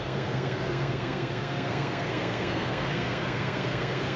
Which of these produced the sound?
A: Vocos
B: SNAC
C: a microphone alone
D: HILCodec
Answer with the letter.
B